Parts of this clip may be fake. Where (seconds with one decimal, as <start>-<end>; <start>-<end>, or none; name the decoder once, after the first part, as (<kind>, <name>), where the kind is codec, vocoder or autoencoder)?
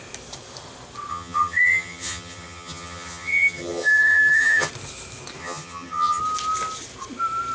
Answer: 1.1-4.7 (vocoder, HiFi-GAN); 5.4-6.2